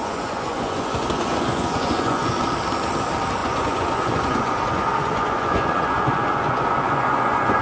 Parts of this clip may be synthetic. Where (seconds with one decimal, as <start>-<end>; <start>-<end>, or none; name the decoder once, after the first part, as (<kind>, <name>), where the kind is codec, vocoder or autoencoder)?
0.0-2.3 (vocoder, Vocos); 3.4-7.6